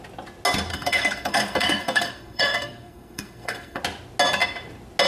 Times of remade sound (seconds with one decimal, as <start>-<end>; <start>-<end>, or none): 0.7-3.8